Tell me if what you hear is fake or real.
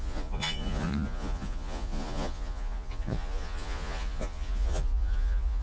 fake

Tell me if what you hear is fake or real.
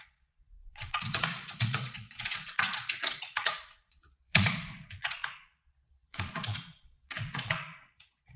fake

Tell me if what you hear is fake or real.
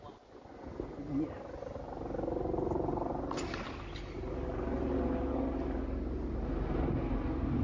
real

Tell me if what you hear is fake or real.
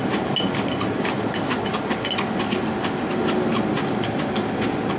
real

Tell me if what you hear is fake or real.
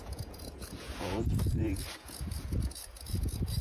fake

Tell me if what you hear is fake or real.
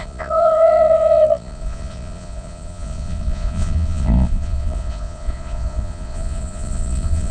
fake